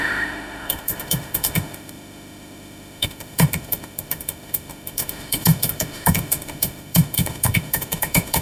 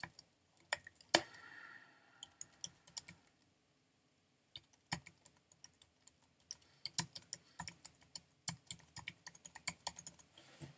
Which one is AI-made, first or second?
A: first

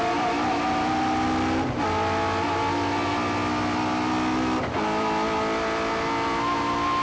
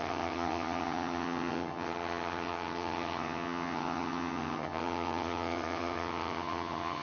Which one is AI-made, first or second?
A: second